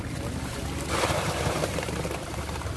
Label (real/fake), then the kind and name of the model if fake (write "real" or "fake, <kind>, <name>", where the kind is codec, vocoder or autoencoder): real